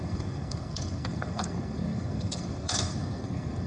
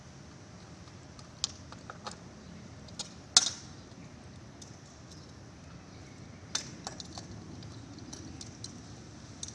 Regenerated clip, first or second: first